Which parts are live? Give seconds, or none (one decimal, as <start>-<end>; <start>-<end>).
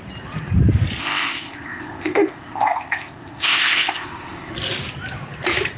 0.0-1.0; 4.5-5.8